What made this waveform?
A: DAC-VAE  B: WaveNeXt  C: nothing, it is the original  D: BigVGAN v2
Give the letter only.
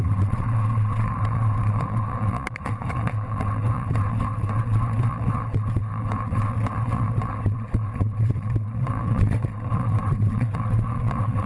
B